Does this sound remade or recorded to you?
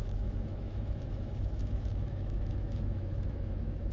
remade